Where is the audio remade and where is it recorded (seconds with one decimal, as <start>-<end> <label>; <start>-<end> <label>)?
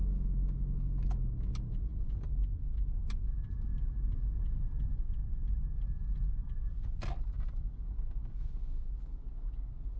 0.0-1.5 remade; 1.5-10.0 recorded